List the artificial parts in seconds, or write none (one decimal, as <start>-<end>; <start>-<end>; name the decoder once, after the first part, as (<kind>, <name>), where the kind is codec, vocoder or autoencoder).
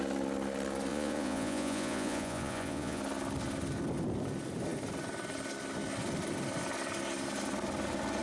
0.9-3.0 (vocoder, Vocos)